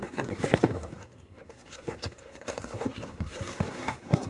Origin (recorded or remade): remade